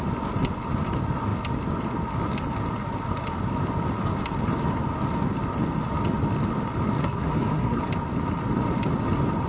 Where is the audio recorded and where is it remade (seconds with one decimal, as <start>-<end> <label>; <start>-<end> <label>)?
0.0-7.0 recorded; 7.0-7.8 remade; 7.8-9.5 recorded